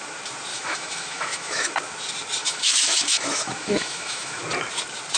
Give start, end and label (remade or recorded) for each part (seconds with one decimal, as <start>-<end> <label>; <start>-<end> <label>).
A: 0.0-0.5 recorded; 0.5-1.7 remade; 1.7-2.4 recorded; 2.4-4.4 remade; 4.4-5.2 recorded